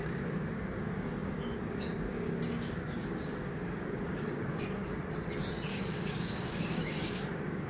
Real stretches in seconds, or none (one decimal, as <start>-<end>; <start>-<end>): 4.8-5.7